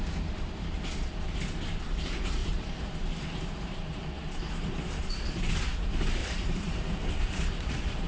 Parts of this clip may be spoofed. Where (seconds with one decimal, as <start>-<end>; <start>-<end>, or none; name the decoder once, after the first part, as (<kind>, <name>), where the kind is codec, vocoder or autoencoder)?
2.4-4.9 (vocoder, BigVGAN v2); 6.2-8.1

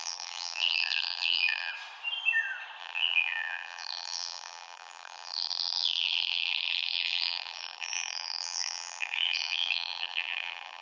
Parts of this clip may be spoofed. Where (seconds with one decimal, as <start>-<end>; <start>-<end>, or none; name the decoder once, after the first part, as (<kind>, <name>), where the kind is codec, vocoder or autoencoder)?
0.0-1.7 (vocoder, BigVGAN v2); 2.8-10.8

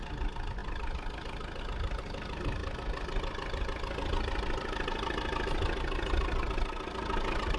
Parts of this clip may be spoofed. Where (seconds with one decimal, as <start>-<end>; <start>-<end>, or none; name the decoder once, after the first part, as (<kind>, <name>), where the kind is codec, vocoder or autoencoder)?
none

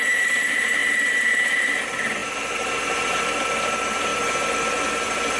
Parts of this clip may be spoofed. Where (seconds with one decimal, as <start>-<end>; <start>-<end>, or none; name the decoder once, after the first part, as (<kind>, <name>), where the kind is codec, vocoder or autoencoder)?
0.0-0.8 (vocoder, BigVGAN v2); 1.8-2.2; 3.2-4.1; 4.9-5.4

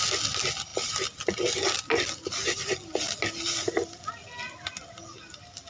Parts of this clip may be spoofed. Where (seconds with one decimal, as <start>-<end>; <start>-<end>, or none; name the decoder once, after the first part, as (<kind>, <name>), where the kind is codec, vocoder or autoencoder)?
none

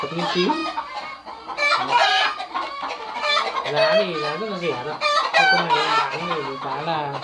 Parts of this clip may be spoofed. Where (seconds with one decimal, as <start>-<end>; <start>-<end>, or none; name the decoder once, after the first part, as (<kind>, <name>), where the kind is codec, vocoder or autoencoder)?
none

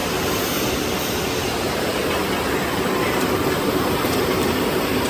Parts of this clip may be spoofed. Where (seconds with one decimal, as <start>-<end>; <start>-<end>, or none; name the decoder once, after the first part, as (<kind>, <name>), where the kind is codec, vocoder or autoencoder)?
3.1-5.1 (vocoder, BigVGAN v2)